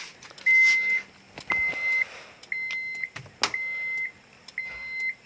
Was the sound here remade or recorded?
recorded